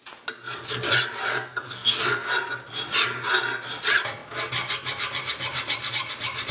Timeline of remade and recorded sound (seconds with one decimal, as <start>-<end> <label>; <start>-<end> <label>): 0.0-1.3 recorded; 1.3-2.3 remade; 2.3-6.5 recorded